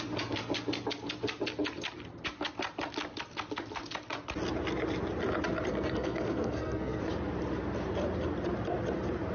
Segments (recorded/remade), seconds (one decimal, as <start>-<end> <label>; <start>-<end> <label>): 0.0-5.7 recorded; 5.7-7.0 remade; 7.0-9.3 recorded